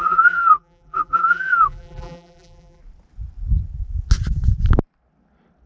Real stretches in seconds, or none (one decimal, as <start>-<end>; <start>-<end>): 2.8-5.7